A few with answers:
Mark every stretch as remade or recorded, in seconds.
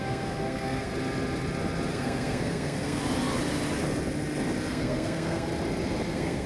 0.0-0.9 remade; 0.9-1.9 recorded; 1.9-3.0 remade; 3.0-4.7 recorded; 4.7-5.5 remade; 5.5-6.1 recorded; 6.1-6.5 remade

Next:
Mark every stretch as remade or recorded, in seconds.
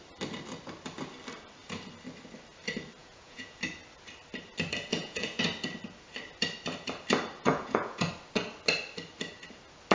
0.0-3.0 recorded; 3.0-3.6 remade; 3.6-4.9 recorded; 4.9-5.4 remade; 5.4-7.5 recorded; 7.5-8.1 remade; 8.1-9.9 recorded